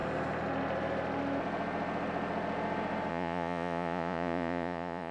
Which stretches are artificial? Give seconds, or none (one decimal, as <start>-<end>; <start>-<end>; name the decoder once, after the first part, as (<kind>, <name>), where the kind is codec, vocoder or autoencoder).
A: 3.1-5.1 (vocoder, Vocos)